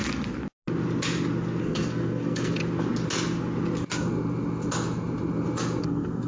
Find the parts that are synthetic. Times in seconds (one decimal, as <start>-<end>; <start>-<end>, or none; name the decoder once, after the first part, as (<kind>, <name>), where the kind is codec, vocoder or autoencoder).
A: 1.6-2.6 (codec, SNAC); 5.8-6.3